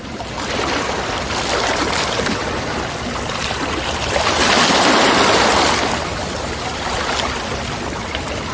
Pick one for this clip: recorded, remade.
recorded